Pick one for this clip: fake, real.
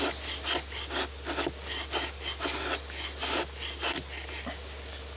real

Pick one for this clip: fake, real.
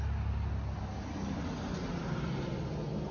real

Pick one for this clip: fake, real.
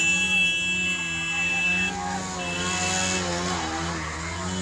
real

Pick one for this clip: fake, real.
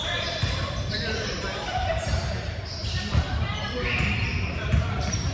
fake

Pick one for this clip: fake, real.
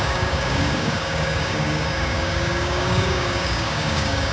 fake